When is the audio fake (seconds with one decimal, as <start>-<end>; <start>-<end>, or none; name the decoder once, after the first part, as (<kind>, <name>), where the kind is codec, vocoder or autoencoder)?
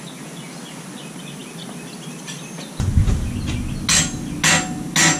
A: none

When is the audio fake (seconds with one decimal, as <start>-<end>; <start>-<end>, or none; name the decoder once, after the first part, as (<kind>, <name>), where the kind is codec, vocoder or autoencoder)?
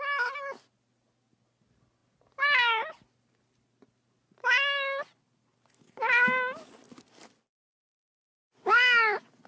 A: none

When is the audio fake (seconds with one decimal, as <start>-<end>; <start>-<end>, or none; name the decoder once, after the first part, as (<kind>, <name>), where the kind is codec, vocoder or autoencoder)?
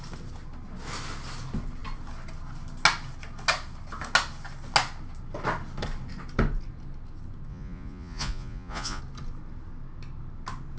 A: 7.5-9.0 (vocoder, Vocos)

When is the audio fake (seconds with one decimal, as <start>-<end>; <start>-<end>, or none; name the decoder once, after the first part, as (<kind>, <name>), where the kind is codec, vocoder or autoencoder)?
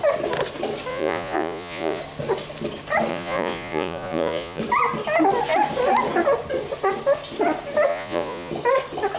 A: 0.9-2.0 (vocoder, Vocos); 3.1-4.6; 7.9-8.5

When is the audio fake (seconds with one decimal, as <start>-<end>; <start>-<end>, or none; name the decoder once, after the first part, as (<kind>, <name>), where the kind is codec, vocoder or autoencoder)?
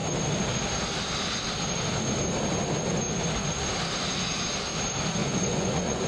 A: 5.2-6.1 (vocoder, Vocos)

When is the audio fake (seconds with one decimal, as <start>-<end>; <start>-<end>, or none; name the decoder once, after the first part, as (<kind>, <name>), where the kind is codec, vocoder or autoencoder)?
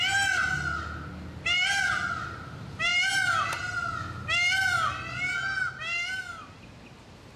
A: none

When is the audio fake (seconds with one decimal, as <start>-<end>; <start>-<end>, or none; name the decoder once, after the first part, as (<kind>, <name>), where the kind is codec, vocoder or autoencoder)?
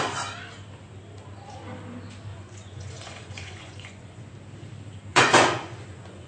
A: 2.3-4.3 (vocoder, Vocos); 5.1-6.3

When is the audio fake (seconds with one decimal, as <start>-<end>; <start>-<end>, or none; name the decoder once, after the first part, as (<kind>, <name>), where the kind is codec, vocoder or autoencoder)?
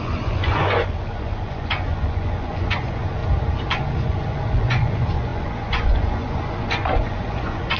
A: 0.0-3.2 (vocoder, Vocos); 3.7-7.8